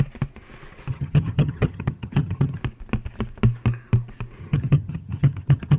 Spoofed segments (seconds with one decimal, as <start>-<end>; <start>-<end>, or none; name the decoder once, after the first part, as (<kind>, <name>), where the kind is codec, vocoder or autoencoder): 0.9-2.6 (vocoder, HiFi-GAN); 4.4-5.8